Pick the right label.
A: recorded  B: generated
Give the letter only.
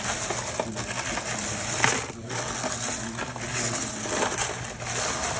A